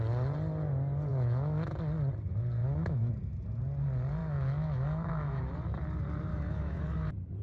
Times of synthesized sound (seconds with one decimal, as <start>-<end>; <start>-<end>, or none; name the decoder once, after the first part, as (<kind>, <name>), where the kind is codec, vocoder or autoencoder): 1.1-1.7 (autoencoder, DAC-VAE); 2.6-3.1; 4.2-5.4; 6.3-6.8